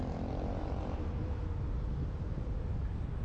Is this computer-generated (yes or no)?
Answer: no